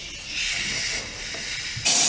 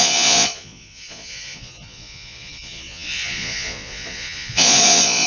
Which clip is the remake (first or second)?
second